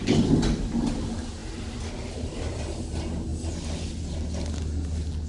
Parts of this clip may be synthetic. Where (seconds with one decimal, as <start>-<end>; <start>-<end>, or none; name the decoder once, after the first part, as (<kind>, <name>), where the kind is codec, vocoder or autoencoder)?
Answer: none